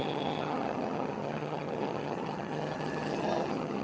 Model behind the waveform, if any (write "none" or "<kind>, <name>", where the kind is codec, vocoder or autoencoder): vocoder, HiFi-GAN